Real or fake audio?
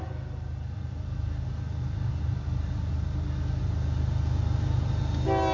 real